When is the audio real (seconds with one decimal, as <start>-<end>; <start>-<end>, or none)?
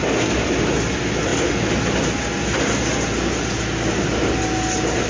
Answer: 0.0-5.1